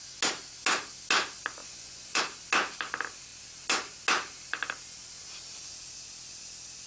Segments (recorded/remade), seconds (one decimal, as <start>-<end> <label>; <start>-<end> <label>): 0.0-1.6 recorded; 1.6-2.2 remade; 2.2-6.9 recorded